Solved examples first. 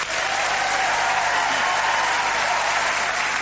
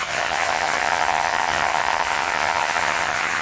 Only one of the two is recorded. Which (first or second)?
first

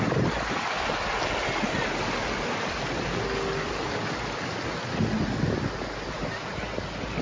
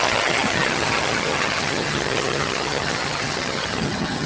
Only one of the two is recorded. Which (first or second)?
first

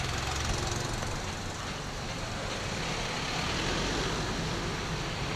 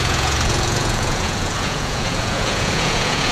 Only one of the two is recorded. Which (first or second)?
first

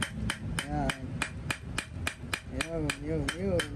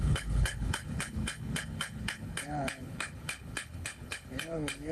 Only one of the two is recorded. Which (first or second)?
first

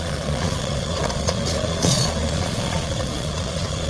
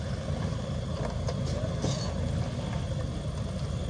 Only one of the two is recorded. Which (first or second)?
second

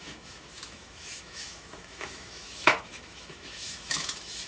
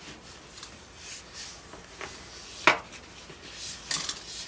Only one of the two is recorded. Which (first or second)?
second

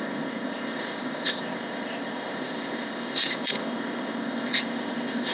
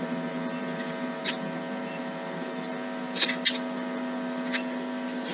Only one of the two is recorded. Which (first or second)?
second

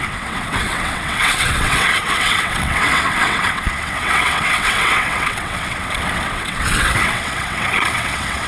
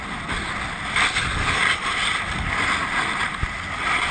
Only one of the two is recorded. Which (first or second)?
second